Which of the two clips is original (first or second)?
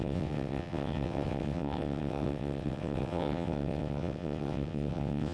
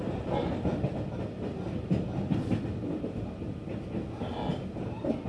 second